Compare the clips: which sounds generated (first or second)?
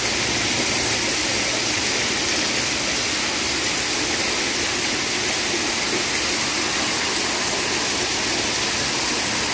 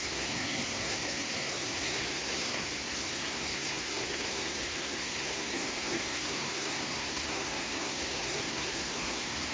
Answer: second